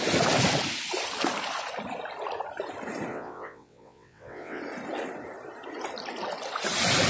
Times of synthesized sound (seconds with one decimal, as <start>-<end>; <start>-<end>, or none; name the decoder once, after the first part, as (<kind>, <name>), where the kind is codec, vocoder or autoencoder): 3.1-4.6 (vocoder, WaveNeXt)

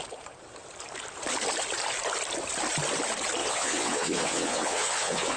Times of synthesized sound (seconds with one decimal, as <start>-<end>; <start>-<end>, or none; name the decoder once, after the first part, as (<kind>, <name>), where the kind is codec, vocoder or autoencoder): 3.4-5.4 (vocoder, WaveNeXt)